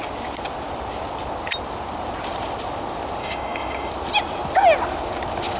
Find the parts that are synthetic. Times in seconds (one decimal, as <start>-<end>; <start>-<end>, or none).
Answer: 3.2-3.9